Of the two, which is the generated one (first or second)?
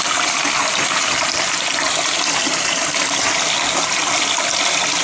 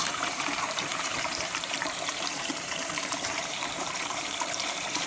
second